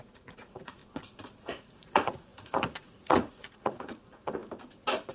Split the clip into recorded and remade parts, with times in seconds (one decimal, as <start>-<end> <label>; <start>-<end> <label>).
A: 0.0-0.8 remade; 0.8-1.4 recorded; 1.4-4.4 remade; 4.4-5.1 recorded